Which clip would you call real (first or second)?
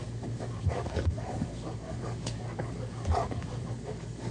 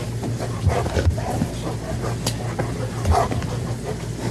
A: second